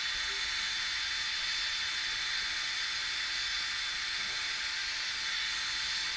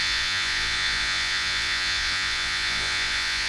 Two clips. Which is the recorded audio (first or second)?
first